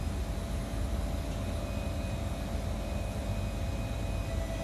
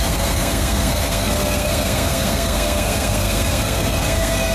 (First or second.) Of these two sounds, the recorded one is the first